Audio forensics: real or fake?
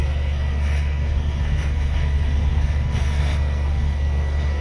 fake